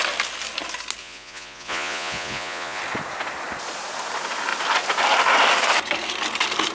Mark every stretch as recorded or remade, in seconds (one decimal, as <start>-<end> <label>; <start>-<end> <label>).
0.0-1.0 recorded; 1.0-2.8 remade; 2.8-6.7 recorded